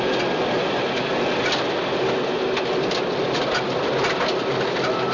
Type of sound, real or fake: real